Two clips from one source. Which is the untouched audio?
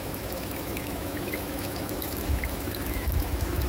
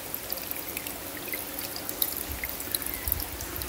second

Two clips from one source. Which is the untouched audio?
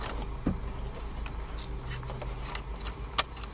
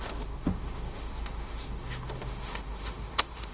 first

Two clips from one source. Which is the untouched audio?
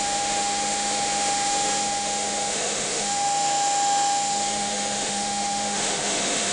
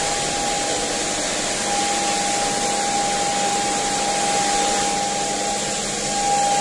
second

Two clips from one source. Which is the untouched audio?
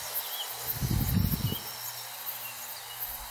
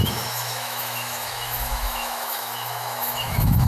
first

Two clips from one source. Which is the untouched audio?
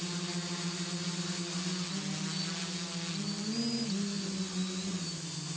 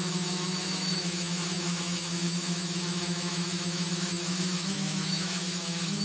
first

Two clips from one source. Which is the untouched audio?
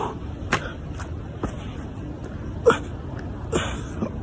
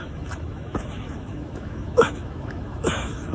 first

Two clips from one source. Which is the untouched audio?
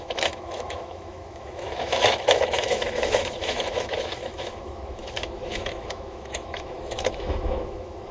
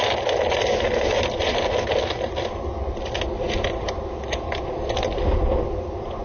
second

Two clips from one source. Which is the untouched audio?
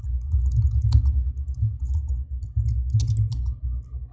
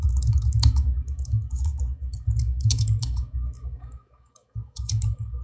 first